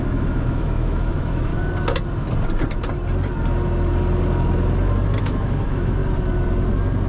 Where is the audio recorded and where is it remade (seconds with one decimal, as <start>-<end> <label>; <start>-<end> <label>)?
0.0-1.5 remade; 1.5-5.2 recorded; 5.2-6.0 remade; 6.0-7.1 recorded